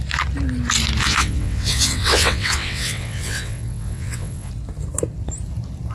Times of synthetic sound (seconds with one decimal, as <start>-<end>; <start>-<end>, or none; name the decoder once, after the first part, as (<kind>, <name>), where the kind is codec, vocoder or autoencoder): 1.0-4.5 (vocoder, WaveNeXt)